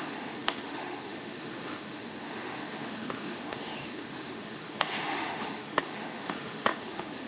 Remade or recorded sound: remade